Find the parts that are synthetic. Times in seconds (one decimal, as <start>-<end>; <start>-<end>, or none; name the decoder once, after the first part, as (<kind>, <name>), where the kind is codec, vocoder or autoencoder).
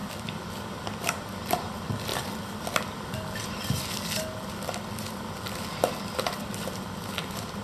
0.0-0.6 (vocoder, BigVGAN v2); 2.1-6.7